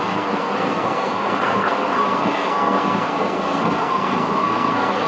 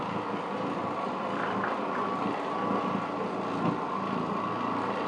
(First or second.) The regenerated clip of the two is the first